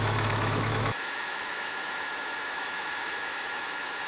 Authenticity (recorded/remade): remade